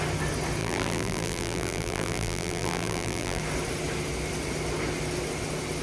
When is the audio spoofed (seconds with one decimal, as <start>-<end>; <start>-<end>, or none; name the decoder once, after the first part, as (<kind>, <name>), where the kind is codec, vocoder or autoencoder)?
0.6-3.4 (vocoder, BigVGAN v2)